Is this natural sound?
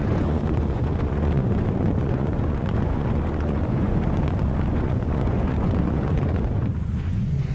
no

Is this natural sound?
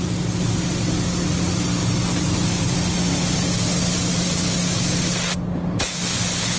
yes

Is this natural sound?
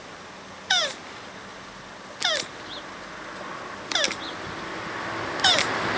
yes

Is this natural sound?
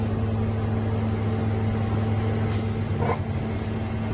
yes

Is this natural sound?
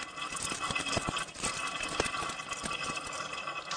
yes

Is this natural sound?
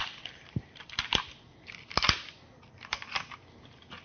yes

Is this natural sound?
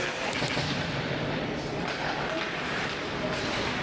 yes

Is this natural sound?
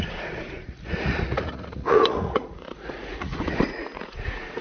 no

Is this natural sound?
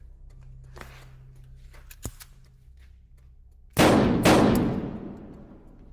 yes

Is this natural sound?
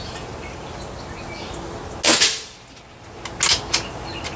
yes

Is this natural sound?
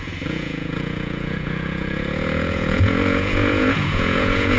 no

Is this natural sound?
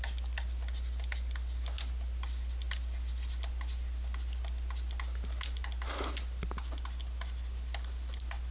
yes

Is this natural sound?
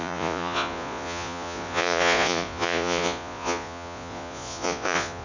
no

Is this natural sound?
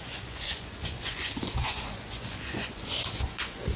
no